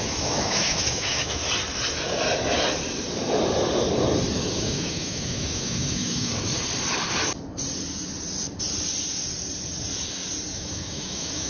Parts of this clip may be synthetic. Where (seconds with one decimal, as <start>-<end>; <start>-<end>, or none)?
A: 0.0-1.4; 4.5-6.3; 10.5-11.5